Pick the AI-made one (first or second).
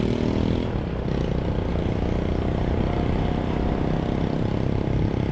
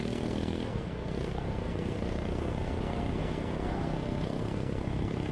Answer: second